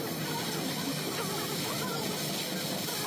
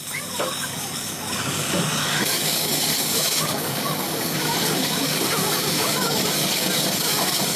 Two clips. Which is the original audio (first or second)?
first